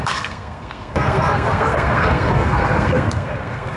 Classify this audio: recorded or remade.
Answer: remade